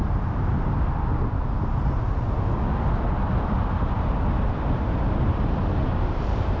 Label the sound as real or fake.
real